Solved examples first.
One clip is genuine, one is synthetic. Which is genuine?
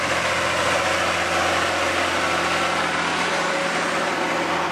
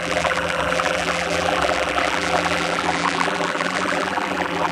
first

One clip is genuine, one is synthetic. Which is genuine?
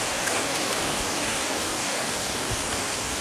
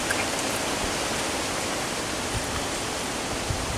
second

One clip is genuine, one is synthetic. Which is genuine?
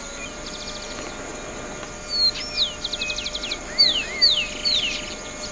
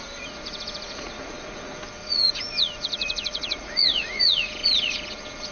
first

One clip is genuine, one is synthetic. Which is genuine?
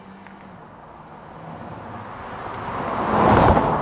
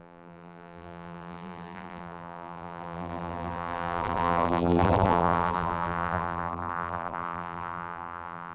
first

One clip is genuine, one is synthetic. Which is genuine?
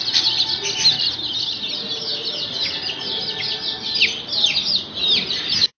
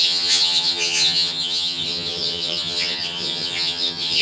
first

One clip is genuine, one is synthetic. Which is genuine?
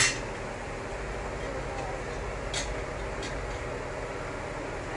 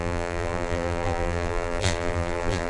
first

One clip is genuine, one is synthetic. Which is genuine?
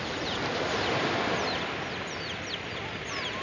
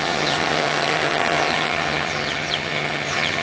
first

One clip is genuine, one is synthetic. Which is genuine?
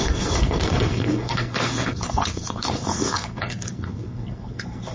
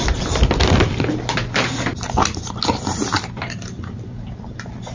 second